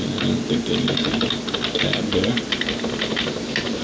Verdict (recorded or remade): recorded